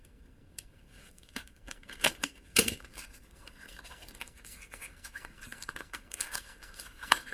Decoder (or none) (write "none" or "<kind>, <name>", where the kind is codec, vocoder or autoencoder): codec, SNAC